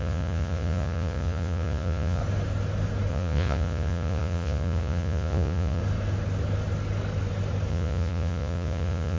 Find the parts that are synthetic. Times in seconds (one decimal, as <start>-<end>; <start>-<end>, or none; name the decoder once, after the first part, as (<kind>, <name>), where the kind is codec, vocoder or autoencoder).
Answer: 0.0-2.2 (vocoder, Vocos); 3.1-5.8; 7.7-9.2